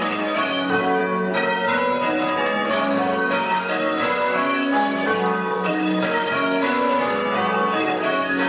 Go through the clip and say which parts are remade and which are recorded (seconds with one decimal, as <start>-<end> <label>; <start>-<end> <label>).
0.0-1.0 remade; 1.0-2.7 recorded; 2.7-7.2 remade; 7.2-7.8 recorded; 7.8-8.5 remade